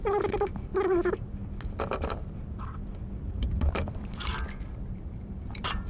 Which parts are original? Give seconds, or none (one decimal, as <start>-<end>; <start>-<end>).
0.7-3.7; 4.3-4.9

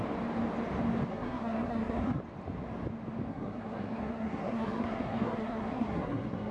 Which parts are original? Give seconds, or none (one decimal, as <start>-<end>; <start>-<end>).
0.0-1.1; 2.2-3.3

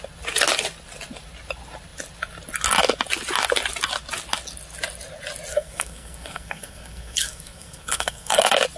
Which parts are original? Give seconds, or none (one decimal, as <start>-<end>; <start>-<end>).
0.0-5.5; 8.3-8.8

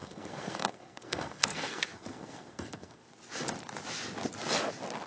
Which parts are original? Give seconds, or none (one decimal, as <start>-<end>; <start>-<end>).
3.0-5.1

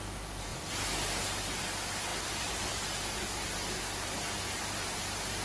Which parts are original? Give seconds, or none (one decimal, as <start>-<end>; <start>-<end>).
0.0-5.4